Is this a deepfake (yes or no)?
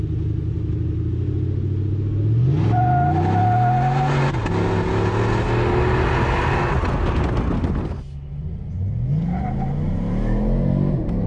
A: no